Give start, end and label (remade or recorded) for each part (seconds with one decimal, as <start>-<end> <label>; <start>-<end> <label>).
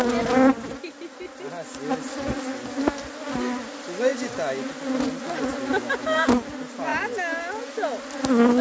0.0-8.6 recorded